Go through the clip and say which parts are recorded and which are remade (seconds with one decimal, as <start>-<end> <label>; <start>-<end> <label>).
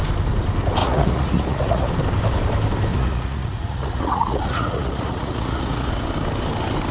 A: 0.0-0.8 recorded; 0.8-1.9 remade; 1.9-2.9 recorded; 2.9-5.9 remade; 5.9-6.9 recorded